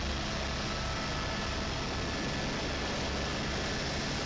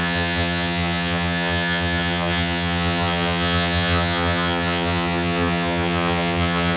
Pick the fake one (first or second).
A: second